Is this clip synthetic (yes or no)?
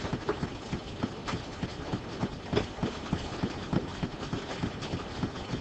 no